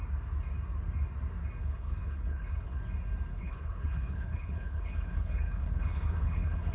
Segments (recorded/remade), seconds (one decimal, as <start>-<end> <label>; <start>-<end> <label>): 0.0-1.6 recorded; 1.6-2.8 remade; 2.8-3.3 recorded; 3.3-6.7 remade